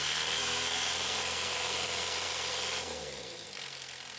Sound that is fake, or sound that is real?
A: fake